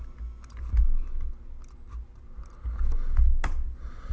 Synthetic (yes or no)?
no